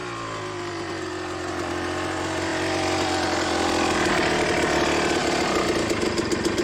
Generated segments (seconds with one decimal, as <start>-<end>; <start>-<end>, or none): none